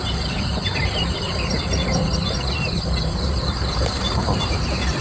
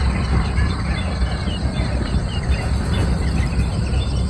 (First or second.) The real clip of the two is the second